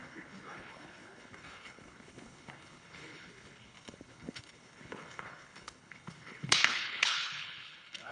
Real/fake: fake